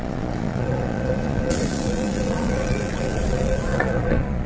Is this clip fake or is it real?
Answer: fake